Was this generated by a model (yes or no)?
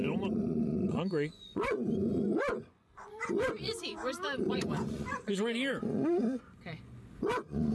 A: yes